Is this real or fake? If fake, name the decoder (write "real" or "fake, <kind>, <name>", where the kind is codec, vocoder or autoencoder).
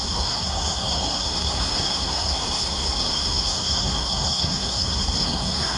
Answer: fake, codec, SNAC